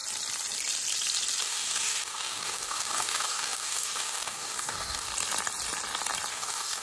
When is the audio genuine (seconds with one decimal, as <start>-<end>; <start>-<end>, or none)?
0.0-1.4; 5.1-6.3